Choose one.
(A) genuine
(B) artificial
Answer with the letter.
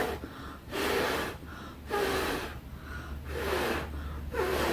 A